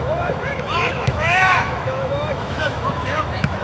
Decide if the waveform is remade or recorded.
remade